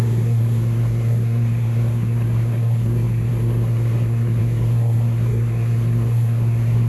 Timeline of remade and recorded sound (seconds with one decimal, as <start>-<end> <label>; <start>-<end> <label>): 0.0-6.9 remade

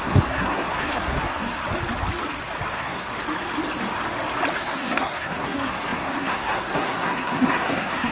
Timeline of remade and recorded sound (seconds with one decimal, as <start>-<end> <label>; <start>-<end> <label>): 0.0-1.6 remade; 1.6-2.7 recorded; 2.7-3.1 remade; 3.1-4.5 recorded; 4.5-8.1 remade

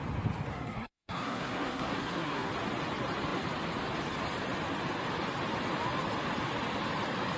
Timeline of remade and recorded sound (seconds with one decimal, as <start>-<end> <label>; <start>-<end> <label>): 0.0-0.5 recorded; 0.5-2.5 remade; 2.5-7.4 recorded

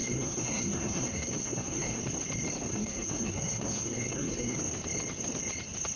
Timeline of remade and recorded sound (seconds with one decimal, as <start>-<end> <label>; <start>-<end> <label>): 0.0-2.0 remade; 2.0-2.7 recorded; 2.7-4.6 remade; 4.6-6.0 recorded